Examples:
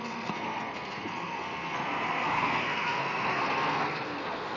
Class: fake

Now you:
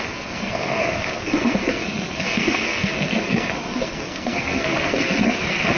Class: fake